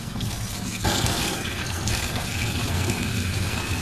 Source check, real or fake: fake